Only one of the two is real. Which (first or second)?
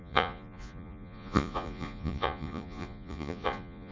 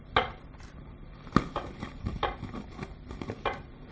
second